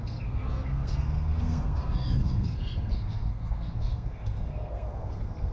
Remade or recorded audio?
remade